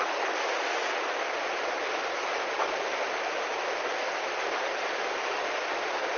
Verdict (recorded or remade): recorded